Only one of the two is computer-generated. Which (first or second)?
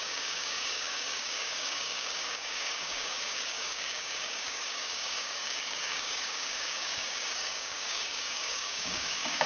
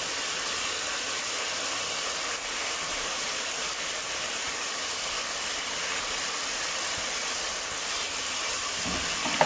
first